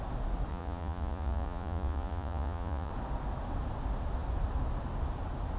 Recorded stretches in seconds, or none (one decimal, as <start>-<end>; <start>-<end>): 0.0-0.5; 2.9-5.6